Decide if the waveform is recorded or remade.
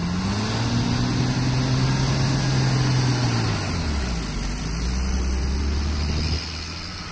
recorded